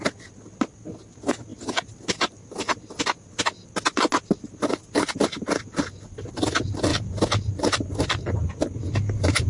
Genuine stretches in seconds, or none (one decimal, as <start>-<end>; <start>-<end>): 0.0-9.5